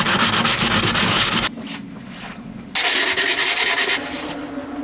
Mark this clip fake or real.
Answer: real